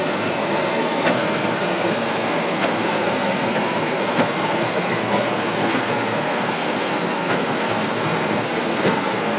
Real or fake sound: fake